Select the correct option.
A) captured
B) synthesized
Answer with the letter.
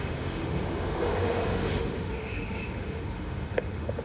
B